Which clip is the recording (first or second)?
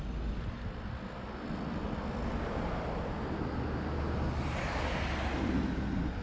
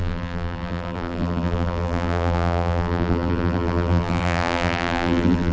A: first